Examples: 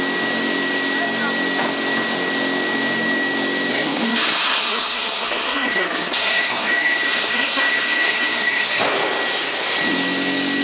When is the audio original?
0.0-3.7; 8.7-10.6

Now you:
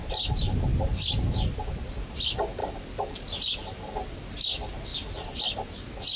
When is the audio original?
0.0-2.6; 4.2-4.9; 5.7-6.2

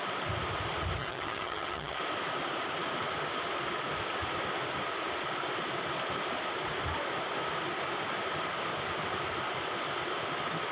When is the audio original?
0.0-1.0; 2.0-10.7

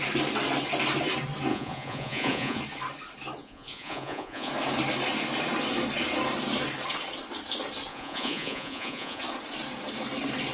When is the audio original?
0.0-1.5; 2.6-3.4; 4.5-7.9; 9.2-10.5